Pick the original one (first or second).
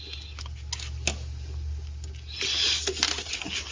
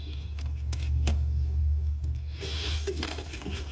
first